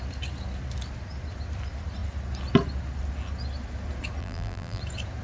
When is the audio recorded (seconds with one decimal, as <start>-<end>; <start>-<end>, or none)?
0.0-4.2; 4.8-5.2